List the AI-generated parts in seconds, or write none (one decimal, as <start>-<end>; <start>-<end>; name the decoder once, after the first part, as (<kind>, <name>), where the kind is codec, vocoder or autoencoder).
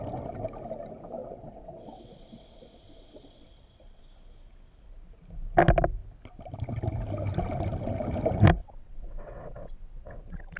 1.2-4.0 (vocoder, WaveNeXt); 8.6-10.2